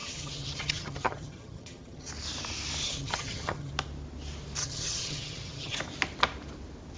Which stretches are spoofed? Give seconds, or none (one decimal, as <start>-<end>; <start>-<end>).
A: 0.0-2.1; 2.8-3.7; 4.6-5.8